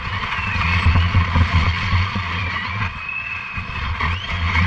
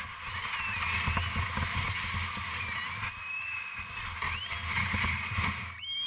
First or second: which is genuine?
second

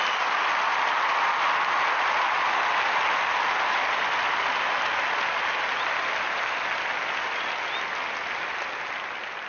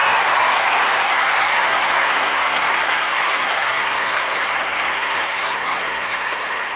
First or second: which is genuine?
first